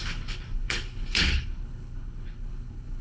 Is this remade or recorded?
remade